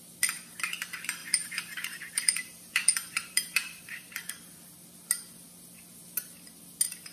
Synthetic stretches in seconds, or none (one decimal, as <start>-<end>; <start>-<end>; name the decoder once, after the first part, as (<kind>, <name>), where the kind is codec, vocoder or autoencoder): 1.2-4.3 (vocoder, BigVGAN v2)